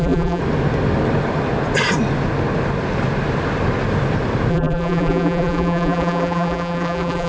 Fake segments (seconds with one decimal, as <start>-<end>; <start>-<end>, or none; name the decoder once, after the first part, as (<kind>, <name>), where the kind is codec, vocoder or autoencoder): 0.0-0.4 (vocoder, BigVGAN v2); 4.5-7.3